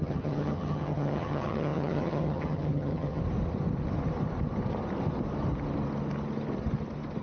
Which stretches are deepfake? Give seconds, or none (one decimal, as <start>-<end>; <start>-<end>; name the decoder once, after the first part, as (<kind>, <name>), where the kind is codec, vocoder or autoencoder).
0.0-3.2 (vocoder, HiFi-GAN)